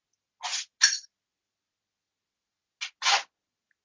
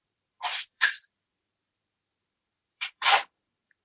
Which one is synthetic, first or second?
second